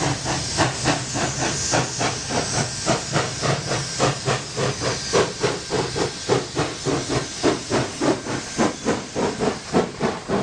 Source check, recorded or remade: recorded